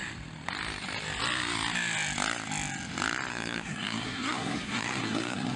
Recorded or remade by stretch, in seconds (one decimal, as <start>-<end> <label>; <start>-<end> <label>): 0.0-3.3 recorded; 3.3-5.6 remade